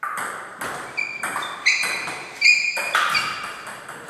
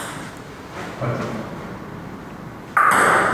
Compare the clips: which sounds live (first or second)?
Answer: second